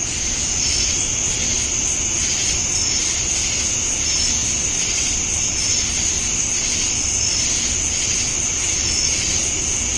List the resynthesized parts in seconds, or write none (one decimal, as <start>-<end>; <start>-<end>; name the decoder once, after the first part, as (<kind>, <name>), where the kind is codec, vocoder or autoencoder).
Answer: 1.4-3.6 (vocoder, BigVGAN v2); 5.7-7.4; 8.1-8.7